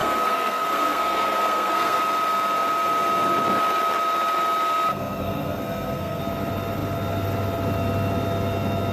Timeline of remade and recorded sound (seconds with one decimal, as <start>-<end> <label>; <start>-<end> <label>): 0.0-2.0 remade; 2.0-4.9 recorded; 4.9-6.2 remade; 6.2-8.9 recorded